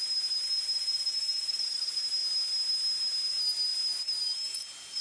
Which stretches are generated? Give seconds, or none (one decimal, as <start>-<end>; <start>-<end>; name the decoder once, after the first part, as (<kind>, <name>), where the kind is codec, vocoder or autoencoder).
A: none